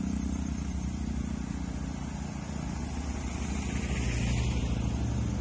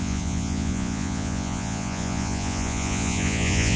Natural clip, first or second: first